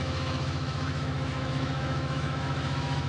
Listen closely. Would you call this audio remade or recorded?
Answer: remade